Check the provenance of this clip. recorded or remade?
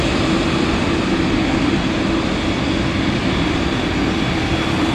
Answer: recorded